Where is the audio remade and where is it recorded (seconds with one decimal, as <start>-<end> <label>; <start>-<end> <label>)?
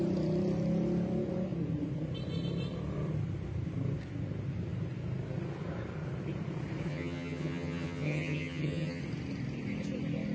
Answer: 0.0-6.9 recorded; 6.9-9.0 remade; 9.0-10.3 recorded